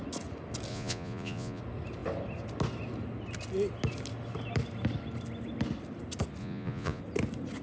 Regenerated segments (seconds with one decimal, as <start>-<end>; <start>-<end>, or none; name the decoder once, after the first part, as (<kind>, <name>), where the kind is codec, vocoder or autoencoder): 0.7-1.6 (vocoder, Vocos); 6.4-7.0